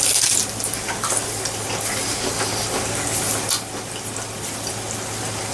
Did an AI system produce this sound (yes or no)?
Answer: no